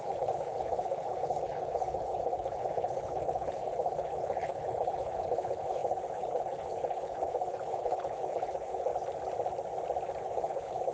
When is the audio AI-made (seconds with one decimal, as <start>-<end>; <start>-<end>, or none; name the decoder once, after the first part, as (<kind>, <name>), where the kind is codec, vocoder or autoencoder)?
0.0-8.9 (codec, HILCodec); 10.2-10.9